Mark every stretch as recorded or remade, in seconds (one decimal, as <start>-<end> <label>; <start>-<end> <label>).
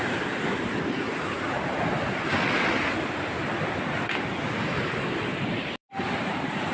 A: 0.0-0.7 remade; 0.7-4.7 recorded; 4.7-6.7 remade